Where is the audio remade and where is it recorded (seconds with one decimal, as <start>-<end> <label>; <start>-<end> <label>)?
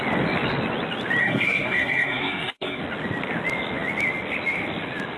0.0-1.2 recorded; 1.2-2.8 remade; 2.8-5.2 recorded